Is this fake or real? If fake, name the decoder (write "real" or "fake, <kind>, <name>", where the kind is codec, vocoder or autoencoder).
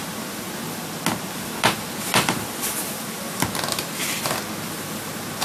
real